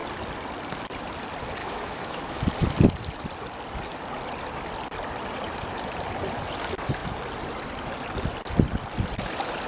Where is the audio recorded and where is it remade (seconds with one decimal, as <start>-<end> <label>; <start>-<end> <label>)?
0.0-1.6 recorded; 1.6-2.4 remade; 2.4-9.7 recorded